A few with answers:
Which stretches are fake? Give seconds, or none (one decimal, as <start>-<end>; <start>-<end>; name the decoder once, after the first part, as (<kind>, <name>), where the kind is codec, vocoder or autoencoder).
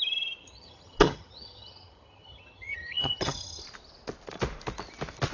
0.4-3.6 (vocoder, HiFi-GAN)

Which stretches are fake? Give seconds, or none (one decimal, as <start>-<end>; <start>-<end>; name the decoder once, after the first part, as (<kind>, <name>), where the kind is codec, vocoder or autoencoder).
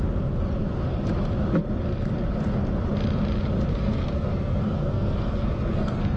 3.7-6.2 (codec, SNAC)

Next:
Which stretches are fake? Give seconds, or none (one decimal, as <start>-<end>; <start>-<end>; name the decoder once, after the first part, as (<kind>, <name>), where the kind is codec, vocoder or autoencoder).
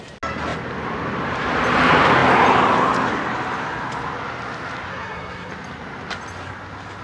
4.9-5.5 (codec, SNAC)